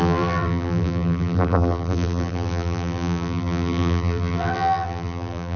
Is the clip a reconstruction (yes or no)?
yes